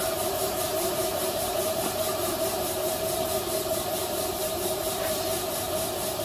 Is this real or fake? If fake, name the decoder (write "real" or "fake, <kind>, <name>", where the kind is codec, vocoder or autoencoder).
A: fake, vocoder, BigVGAN v2